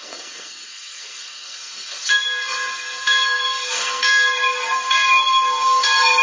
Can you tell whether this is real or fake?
fake